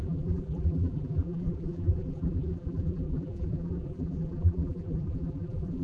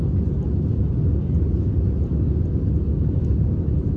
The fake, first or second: first